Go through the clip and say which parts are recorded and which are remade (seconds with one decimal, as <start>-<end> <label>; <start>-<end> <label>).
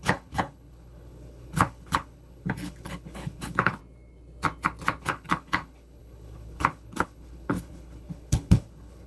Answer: 0.0-3.8 remade; 3.8-5.0 recorded; 5.0-9.1 remade